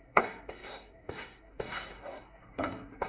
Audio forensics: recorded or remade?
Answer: remade